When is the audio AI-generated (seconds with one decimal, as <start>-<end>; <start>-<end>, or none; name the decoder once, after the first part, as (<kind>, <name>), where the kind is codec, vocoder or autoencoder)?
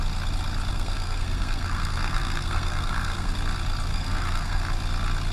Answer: 0.7-3.3 (codec, SNAC); 3.9-4.6